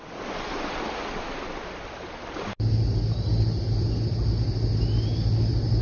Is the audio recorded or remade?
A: recorded